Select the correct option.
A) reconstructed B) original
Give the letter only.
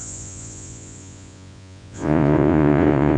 A